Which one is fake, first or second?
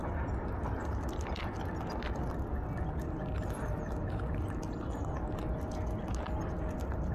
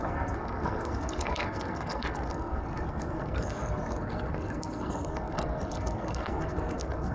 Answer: second